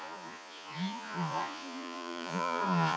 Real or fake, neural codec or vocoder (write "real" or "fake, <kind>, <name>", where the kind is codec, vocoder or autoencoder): fake, vocoder, Vocos